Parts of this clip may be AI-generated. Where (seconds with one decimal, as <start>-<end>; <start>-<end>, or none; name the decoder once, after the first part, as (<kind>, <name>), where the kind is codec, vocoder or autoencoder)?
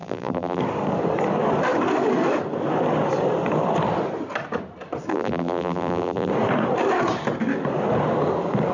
0.0-0.6 (vocoder, BigVGAN v2); 5.1-6.3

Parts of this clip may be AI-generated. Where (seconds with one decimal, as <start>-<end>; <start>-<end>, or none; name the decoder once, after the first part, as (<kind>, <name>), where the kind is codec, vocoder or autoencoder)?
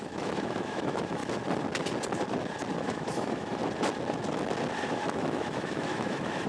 0.0-1.2 (autoencoder, DAC-VAE); 2.8-3.6; 4.9-6.5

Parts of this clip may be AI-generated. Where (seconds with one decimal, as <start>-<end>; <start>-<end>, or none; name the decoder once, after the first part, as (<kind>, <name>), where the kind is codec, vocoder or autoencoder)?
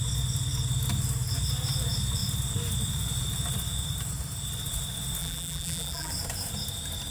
5.2-6.1 (vocoder, BigVGAN v2)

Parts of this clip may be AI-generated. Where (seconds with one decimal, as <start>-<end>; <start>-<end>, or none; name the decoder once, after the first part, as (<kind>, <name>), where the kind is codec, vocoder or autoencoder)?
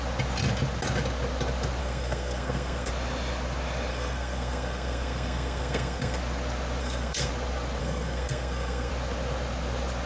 1.8-2.9 (codec, SNAC); 3.9-6.2; 6.8-7.3; 7.8-8.9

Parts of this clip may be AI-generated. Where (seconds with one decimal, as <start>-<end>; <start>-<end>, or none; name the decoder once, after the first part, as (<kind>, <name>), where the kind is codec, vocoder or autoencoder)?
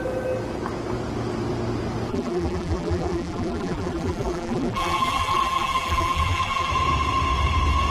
2.1-6.7 (vocoder, BigVGAN v2)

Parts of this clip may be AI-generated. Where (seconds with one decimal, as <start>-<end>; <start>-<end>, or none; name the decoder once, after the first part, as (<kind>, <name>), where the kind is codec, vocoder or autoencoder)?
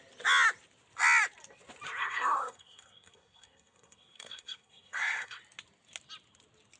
2.0-5.4 (codec, SNAC)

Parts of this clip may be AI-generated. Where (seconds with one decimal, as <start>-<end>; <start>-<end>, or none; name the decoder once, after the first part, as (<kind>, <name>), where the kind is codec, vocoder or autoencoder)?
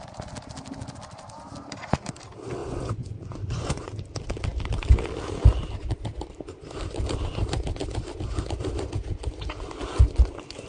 2.6-3.9 (vocoder, Vocos)